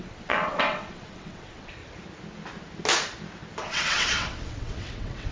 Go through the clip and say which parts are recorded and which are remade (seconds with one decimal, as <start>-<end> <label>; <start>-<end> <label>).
0.0-1.8 remade; 1.8-3.6 recorded; 3.6-5.3 remade